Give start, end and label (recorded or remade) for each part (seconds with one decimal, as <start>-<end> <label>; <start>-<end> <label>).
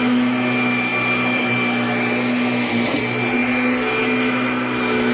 0.0-5.1 recorded